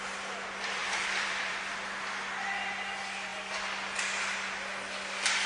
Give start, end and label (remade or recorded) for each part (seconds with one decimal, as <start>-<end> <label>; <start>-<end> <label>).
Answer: 0.0-0.8 recorded; 0.8-1.6 remade; 1.6-5.5 recorded

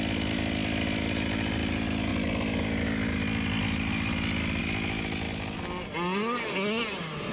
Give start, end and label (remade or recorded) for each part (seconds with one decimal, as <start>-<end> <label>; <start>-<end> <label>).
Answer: 0.0-7.3 recorded

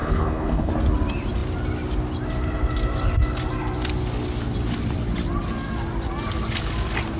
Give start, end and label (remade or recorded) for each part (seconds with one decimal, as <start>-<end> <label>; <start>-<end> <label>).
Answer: 0.0-0.7 remade; 0.7-7.2 recorded

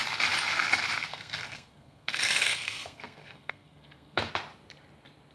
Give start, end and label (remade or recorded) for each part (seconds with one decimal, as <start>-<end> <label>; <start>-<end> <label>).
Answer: 0.0-1.1 recorded; 1.1-4.3 remade; 4.3-5.3 recorded

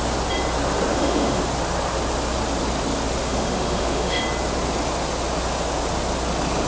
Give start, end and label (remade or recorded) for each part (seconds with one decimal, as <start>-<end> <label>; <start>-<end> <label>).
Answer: 0.0-0.9 recorded; 0.9-1.4 remade; 1.4-3.2 recorded; 3.2-4.2 remade; 4.2-6.7 recorded

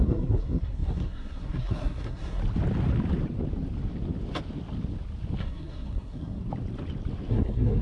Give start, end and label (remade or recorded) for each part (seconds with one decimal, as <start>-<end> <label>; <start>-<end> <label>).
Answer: 0.0-2.4 remade; 2.4-5.4 recorded; 5.4-6.4 remade; 6.4-7.3 recorded; 7.3-7.8 remade

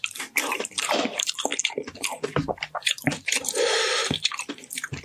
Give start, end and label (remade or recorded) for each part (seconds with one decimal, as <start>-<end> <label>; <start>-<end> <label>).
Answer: 0.0-5.0 remade